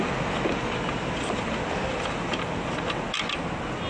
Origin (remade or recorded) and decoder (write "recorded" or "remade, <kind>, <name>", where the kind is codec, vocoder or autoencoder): recorded